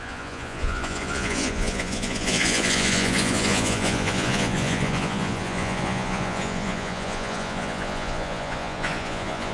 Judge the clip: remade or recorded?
remade